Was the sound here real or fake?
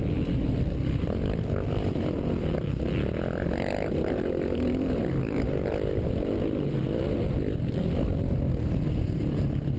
real